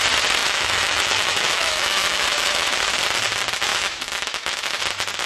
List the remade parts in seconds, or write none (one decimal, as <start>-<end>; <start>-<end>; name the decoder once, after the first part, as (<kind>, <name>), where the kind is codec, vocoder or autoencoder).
0.4-2.9 (autoencoder, DAC-VAE); 3.7-4.8